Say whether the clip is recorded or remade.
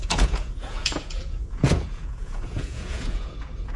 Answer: remade